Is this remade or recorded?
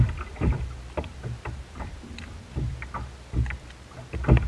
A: recorded